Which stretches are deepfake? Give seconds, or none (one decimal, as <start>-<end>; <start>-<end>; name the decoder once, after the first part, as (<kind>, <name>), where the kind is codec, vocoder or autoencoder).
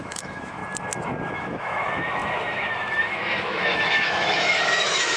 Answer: 0.0-0.6 (autoencoder, DAC-VAE); 1.3-5.2